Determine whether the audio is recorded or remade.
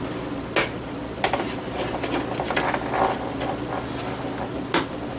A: recorded